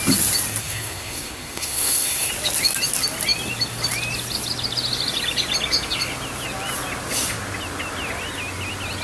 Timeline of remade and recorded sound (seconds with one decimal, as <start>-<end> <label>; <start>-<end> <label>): 0.0-0.6 recorded; 0.6-2.3 remade; 2.3-9.0 recorded